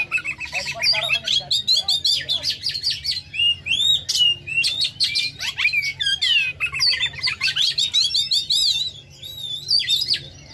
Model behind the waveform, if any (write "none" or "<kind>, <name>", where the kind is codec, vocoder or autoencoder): none